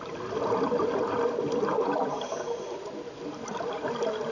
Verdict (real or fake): real